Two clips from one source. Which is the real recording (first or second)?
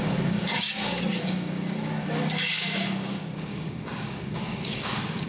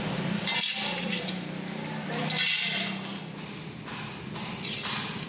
second